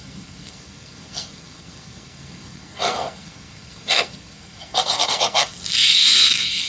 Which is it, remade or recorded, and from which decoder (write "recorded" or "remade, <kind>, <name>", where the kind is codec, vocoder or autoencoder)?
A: remade, codec, SNAC